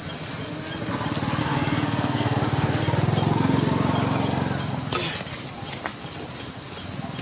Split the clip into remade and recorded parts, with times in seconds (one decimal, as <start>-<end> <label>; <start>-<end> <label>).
0.0-1.4 recorded; 1.4-2.8 remade; 2.8-7.2 recorded